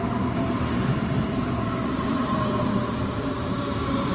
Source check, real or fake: fake